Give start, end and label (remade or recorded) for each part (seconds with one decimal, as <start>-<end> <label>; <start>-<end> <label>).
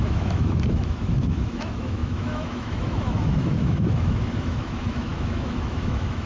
0.0-6.3 remade